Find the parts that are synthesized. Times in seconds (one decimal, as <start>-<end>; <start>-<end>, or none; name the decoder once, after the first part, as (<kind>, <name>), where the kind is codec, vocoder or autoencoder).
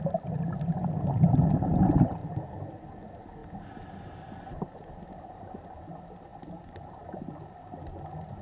6.3-7.2 (vocoder, BigVGAN v2)